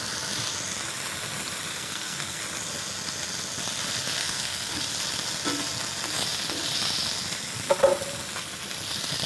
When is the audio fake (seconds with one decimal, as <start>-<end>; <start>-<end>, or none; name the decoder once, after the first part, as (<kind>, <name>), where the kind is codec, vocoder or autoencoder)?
1.7-2.4 (codec, SNAC); 4.2-4.8